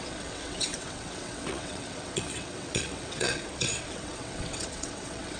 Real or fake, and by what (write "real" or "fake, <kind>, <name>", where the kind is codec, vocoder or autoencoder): fake, vocoder, WaveNeXt